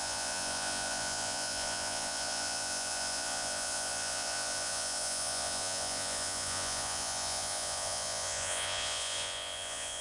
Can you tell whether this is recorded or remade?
remade